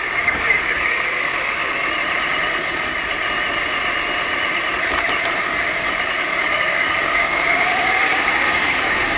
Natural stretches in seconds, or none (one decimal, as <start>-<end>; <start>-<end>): 1.7-6.2